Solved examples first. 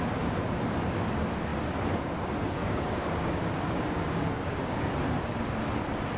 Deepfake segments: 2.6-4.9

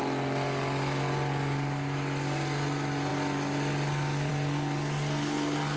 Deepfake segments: none

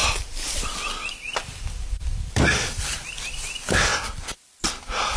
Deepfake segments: 0.0-3.1

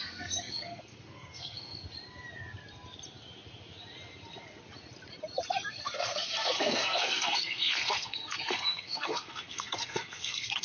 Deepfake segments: 0.0-1.8; 5.7-10.6

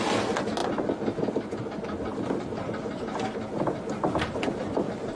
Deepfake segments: none

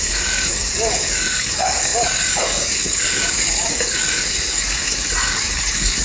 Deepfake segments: 0.0-6.0

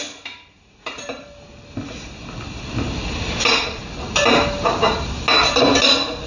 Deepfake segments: none